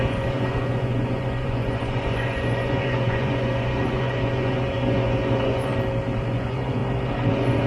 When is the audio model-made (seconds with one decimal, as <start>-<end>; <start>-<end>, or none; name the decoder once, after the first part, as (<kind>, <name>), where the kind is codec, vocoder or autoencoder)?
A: 0.0-5.7 (vocoder, Vocos); 6.3-6.8; 7.3-7.7